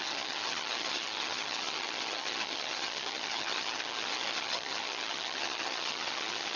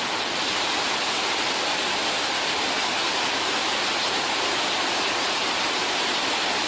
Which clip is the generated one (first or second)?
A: first